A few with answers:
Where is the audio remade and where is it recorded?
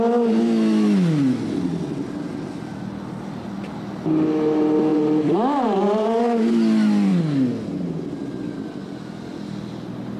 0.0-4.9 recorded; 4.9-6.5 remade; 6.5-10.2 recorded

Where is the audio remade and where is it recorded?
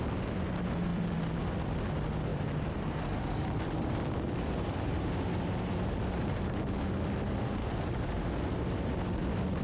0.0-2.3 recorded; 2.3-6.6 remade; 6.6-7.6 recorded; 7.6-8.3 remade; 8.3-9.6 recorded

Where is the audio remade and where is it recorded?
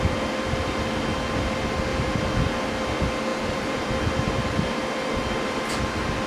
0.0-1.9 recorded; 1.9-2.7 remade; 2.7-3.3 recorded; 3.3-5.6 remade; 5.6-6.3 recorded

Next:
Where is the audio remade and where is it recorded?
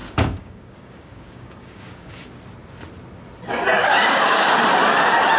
0.0-2.3 remade; 2.3-3.8 recorded; 3.8-4.6 remade; 4.6-5.4 recorded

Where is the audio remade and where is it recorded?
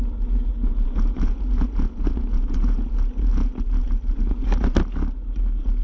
0.0-0.5 recorded; 0.5-3.3 remade; 3.3-3.8 recorded; 3.8-4.5 remade; 4.5-5.8 recorded